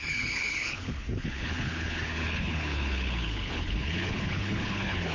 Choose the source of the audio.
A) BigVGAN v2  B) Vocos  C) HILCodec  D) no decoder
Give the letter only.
C